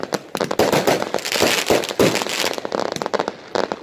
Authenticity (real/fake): real